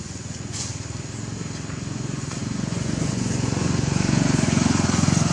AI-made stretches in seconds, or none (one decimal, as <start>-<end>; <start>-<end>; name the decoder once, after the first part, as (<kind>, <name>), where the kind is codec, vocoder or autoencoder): 0.0-0.7 (vocoder, Vocos); 1.7-5.3